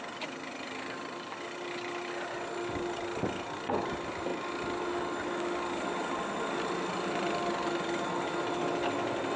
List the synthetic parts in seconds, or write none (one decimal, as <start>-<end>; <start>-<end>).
0.0-4.3; 6.4-9.4